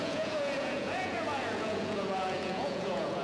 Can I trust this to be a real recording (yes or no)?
no